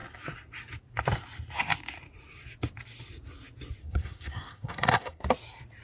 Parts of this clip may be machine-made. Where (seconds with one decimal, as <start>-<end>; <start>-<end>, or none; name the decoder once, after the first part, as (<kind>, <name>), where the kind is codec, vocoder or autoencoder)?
3.8-5.2 (codec, SNAC)